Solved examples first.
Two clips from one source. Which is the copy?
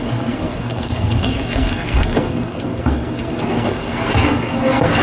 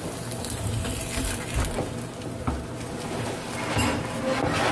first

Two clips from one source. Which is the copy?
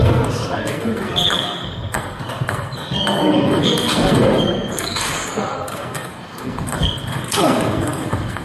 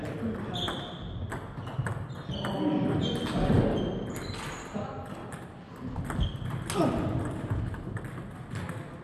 first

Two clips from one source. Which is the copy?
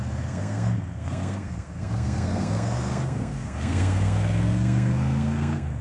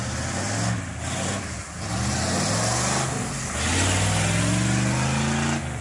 first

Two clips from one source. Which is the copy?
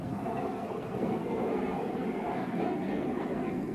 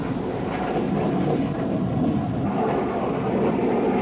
first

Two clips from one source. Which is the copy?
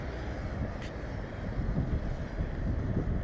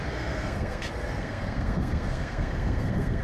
second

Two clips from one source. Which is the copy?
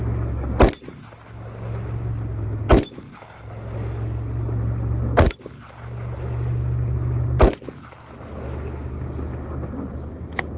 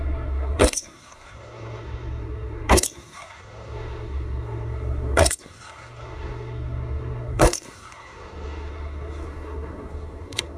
second